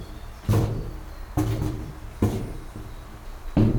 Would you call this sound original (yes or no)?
no